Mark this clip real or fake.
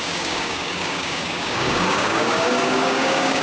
fake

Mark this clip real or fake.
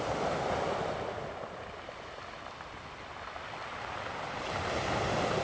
real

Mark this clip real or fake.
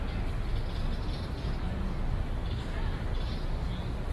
real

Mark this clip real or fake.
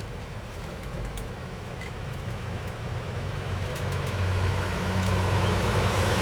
fake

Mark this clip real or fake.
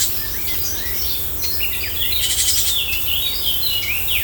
fake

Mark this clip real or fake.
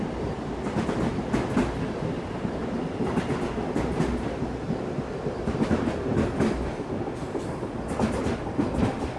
real